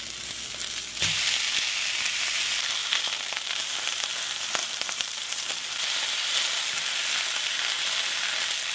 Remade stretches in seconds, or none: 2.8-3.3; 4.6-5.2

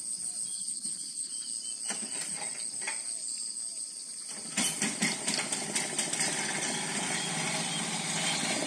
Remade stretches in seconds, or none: 0.5-1.3

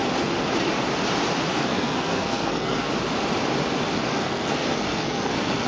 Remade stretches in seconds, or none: 1.5-2.9; 4.1-5.7

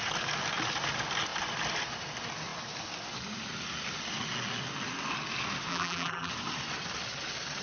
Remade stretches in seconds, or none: 5.7-6.3

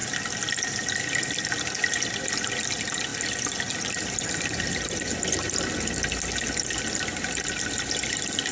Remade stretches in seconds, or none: none

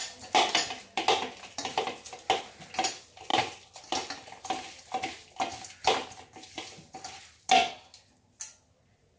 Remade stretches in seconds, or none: none

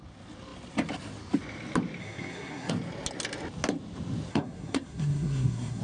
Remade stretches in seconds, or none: 2.0-2.7; 4.3-5.8

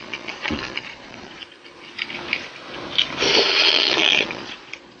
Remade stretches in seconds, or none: 0.0-1.4; 3.5-5.0